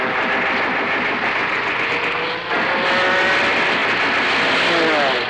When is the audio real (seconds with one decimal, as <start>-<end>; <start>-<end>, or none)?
0.0-1.4; 1.9-5.3